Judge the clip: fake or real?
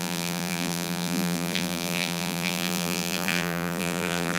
fake